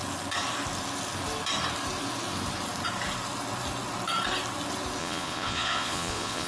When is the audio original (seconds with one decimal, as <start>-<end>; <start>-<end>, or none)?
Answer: 0.0-5.0